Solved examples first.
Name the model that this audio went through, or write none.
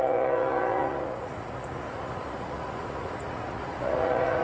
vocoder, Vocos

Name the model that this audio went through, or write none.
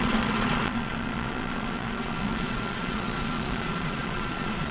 vocoder, Vocos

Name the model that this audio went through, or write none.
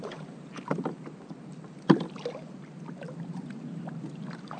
none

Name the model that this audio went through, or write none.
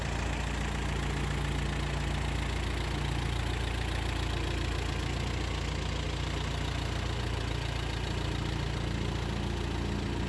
none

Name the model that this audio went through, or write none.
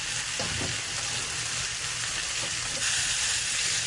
none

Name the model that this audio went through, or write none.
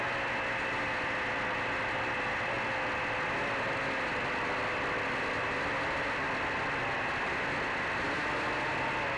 none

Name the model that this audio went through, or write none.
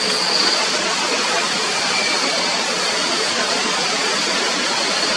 vocoder, Vocos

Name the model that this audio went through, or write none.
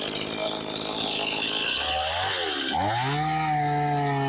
none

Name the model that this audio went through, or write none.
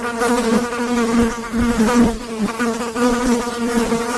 none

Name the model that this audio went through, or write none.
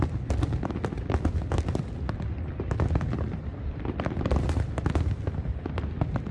none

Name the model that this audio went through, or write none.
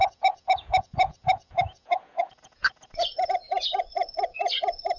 vocoder, Vocos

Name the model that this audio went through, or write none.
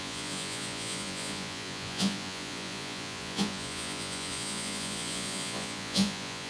vocoder, Vocos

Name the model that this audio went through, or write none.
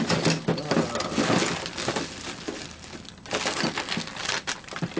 none